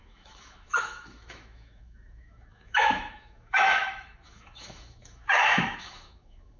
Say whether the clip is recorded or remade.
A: remade